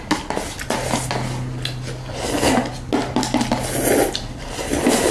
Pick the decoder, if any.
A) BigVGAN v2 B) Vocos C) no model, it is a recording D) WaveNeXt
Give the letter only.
C